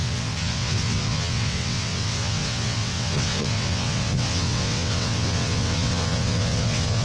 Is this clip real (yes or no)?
no